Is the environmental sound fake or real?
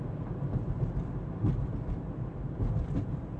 real